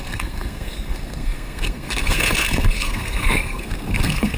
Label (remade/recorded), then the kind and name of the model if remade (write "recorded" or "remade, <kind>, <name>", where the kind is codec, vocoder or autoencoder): remade, codec, SNAC